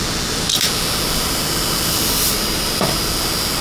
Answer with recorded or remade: remade